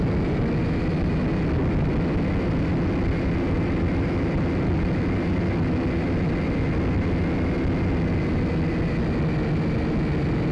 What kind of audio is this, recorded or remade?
recorded